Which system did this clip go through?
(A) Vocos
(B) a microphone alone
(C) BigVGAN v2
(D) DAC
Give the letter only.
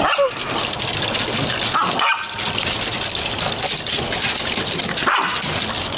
B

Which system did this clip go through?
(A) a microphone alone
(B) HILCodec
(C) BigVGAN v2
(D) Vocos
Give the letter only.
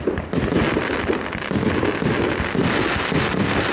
A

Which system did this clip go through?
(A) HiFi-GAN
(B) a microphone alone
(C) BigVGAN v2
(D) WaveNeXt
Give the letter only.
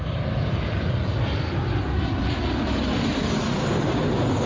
B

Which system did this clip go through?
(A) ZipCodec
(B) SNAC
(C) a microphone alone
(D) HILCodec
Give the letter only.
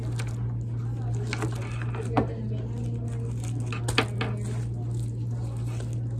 C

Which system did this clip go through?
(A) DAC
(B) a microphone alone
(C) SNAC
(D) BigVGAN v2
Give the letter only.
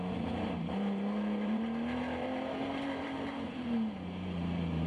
D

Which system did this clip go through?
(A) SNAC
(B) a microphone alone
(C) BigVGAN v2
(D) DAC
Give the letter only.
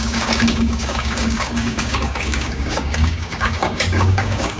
D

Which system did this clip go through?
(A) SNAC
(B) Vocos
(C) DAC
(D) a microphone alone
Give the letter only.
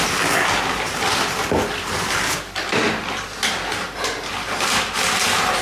D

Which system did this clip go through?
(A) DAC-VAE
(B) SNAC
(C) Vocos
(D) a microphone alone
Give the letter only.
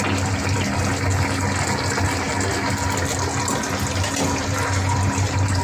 D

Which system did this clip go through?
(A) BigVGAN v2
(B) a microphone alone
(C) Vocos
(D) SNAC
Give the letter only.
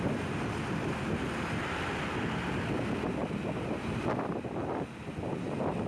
B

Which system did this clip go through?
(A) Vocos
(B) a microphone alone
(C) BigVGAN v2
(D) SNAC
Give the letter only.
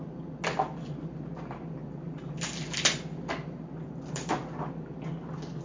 B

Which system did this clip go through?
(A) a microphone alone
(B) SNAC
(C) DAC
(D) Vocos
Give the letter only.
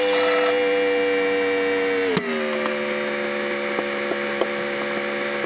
A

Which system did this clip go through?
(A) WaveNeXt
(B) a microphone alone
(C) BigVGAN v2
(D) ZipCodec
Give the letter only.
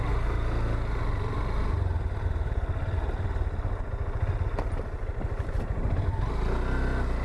B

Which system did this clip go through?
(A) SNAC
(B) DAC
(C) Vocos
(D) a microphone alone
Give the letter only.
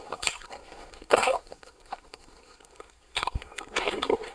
A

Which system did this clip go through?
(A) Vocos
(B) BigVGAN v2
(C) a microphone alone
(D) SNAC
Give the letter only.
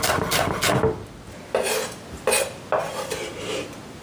C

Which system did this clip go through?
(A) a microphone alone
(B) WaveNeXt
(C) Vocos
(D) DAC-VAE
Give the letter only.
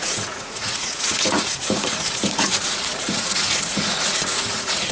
C